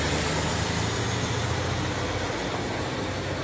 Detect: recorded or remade recorded